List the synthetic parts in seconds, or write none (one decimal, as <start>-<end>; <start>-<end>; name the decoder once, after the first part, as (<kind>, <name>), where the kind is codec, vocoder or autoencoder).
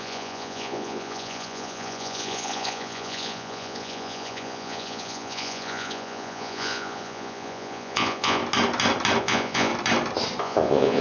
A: 0.0-8.4 (vocoder, Vocos); 9.2-9.7; 10.4-11.0